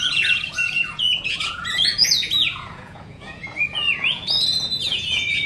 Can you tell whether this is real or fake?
fake